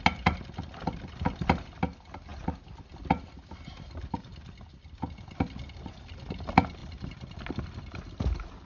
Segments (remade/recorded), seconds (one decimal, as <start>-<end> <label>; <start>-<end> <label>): 0.0-8.7 recorded